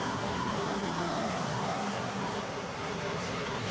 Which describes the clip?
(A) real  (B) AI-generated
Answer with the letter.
B